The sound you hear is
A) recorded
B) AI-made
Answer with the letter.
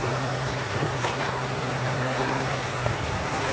B